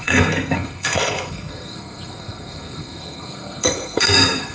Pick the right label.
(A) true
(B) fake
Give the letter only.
B